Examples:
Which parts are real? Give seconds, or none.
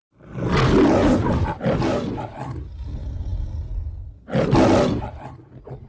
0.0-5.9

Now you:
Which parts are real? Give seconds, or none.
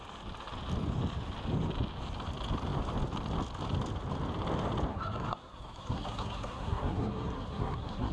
0.0-4.9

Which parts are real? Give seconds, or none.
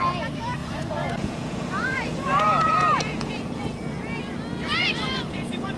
0.0-0.6; 3.6-4.8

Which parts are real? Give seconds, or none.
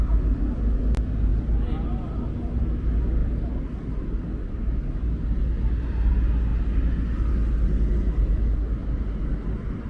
0.0-9.9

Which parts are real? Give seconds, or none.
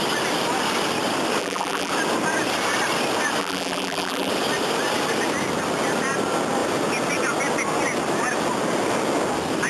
0.0-1.4; 1.9-3.4; 4.3-9.7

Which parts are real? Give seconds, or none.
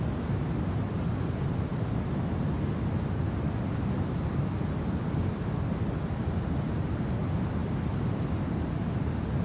0.0-9.4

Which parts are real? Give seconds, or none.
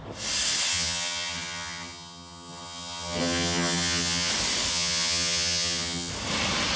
0.0-0.7; 4.3-4.7; 6.1-6.8